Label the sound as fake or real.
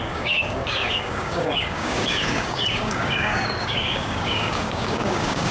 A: fake